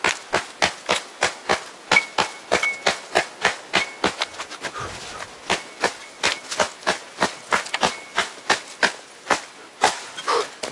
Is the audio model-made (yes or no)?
no